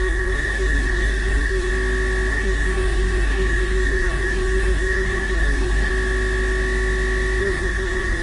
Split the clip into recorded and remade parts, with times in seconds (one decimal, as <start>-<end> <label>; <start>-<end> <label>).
0.0-1.7 remade; 1.7-2.3 recorded; 2.3-5.9 remade; 5.9-7.4 recorded; 7.4-8.2 remade